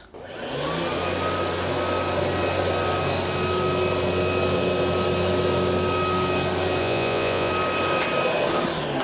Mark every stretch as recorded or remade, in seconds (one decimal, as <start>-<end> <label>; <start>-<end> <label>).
0.0-6.8 recorded; 6.8-7.5 remade; 7.5-9.0 recorded